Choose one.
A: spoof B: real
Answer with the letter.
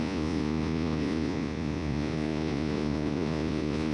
A